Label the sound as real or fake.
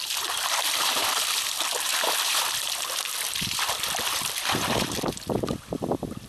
fake